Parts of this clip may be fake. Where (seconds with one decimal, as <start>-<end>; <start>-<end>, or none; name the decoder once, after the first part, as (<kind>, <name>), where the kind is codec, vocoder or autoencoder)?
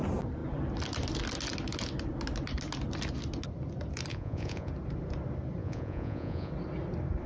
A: 4.1-4.7 (vocoder, Vocos); 5.6-6.5